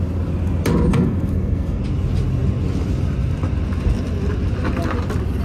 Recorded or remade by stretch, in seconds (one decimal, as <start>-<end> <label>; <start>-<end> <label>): 0.0-0.9 recorded; 0.9-1.8 remade; 1.8-5.4 recorded